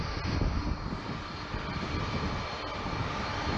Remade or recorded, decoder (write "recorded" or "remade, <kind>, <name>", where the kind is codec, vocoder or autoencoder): recorded